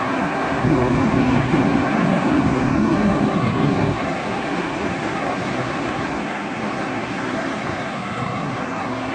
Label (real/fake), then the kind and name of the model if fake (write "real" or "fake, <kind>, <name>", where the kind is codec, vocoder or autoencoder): fake, codec, SNAC